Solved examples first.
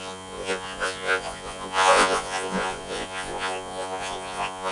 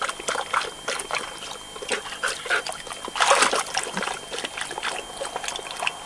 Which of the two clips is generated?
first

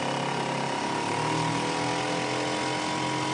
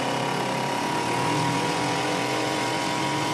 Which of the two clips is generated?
second